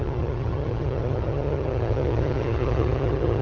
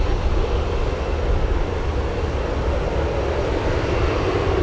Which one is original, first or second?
second